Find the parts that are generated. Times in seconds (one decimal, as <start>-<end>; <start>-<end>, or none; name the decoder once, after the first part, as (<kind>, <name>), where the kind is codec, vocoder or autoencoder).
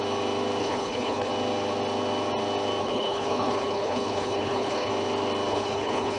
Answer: 0.6-1.3 (codec, HILCodec); 2.8-4.9; 5.5-6.2